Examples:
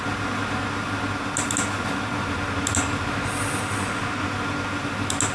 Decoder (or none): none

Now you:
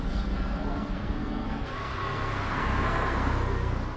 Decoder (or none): codec, SNAC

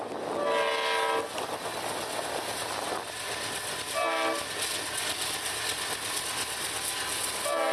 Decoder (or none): none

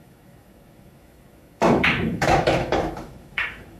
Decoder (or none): autoencoder, DAC-VAE